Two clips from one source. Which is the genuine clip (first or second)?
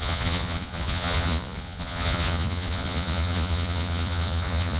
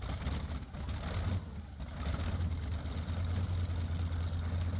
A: second